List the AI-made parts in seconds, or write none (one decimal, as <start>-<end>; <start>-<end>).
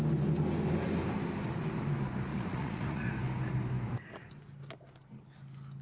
2.3-3.1